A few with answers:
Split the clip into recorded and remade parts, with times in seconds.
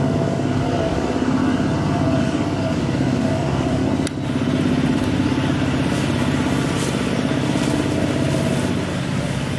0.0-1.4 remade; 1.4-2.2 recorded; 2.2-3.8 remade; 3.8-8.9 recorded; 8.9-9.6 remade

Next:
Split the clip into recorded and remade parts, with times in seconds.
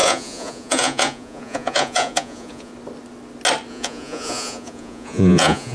0.0-2.7 remade; 2.7-3.7 recorded; 3.7-5.7 remade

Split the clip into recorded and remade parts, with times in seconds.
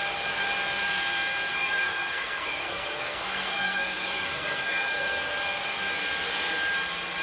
0.0-1.5 recorded; 1.5-5.3 remade; 5.3-7.2 recorded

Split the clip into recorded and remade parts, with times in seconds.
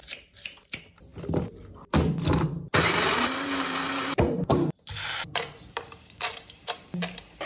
0.0-1.1 remade; 1.1-3.0 recorded; 3.0-7.5 remade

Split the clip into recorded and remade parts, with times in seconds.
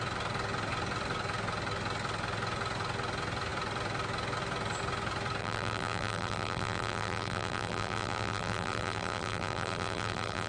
0.0-5.4 recorded; 5.4-10.5 remade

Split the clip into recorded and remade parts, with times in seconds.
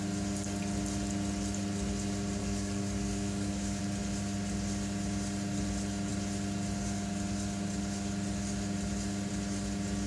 0.0-2.4 recorded; 2.4-3.8 remade; 3.8-10.1 recorded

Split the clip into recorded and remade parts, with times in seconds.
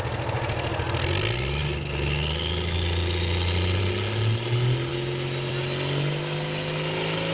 0.0-7.3 recorded